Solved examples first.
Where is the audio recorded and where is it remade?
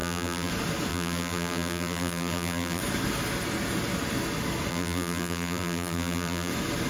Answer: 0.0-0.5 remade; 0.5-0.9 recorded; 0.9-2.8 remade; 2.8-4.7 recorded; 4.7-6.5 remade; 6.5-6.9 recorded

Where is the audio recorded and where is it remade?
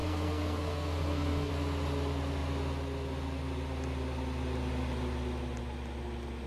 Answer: 0.0-1.5 remade; 1.5-6.5 recorded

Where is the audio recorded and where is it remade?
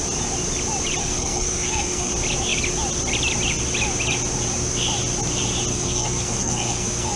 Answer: 0.0-1.0 recorded; 1.0-2.1 remade; 2.1-5.7 recorded; 5.7-7.2 remade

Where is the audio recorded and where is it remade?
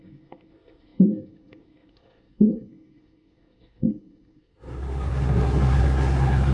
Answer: 0.0-6.5 remade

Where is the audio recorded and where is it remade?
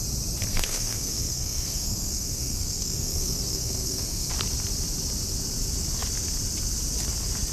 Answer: 0.0-0.5 recorded; 0.5-4.3 remade; 4.3-7.5 recorded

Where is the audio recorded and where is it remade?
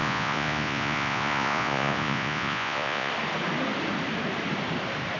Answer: 0.0-3.1 remade; 3.1-5.2 recorded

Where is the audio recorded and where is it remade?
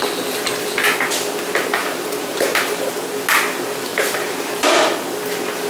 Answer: 0.0-1.8 recorded; 1.8-2.9 remade; 2.9-3.9 recorded; 3.9-4.6 remade; 4.6-5.7 recorded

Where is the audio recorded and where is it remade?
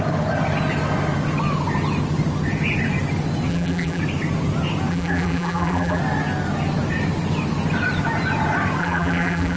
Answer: 0.0-3.5 recorded; 3.5-4.0 remade; 4.0-4.9 recorded; 4.9-6.0 remade; 6.0-8.8 recorded; 8.8-9.6 remade